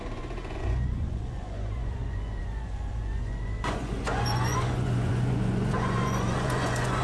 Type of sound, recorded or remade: remade